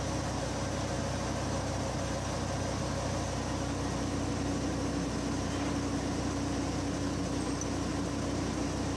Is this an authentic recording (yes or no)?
yes